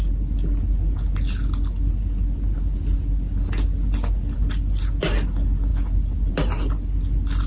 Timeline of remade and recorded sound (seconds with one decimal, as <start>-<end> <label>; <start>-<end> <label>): 0.0-7.5 recorded